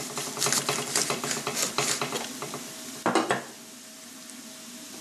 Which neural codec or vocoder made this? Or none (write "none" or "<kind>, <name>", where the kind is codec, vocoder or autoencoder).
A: none